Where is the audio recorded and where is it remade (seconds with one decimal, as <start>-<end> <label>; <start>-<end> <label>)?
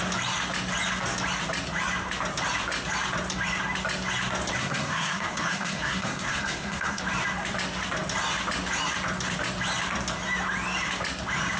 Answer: 0.0-4.6 recorded; 4.6-7.0 remade; 7.0-11.6 recorded